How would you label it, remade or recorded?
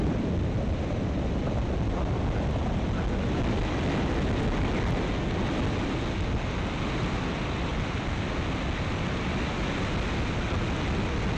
recorded